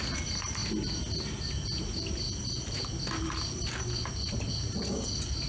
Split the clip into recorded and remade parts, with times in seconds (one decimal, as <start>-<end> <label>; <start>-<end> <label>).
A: 0.0-5.5 recorded